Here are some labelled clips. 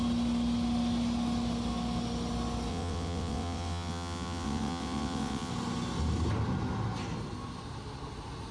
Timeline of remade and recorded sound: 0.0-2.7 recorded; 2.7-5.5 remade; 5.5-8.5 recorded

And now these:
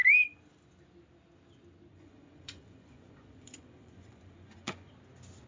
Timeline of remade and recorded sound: 0.0-1.9 recorded; 1.9-4.9 remade; 4.9-5.5 recorded